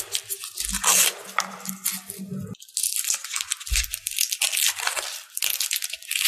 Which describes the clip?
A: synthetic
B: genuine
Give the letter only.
B